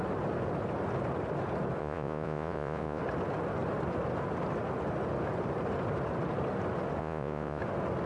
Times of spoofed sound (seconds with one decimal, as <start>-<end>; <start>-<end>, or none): 1.8-3.0; 7.0-7.6